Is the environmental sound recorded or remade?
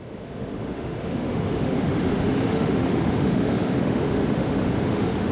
remade